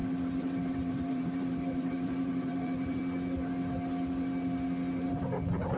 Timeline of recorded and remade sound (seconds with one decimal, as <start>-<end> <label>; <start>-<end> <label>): 0.0-3.0 remade; 3.0-5.0 recorded; 5.0-5.8 remade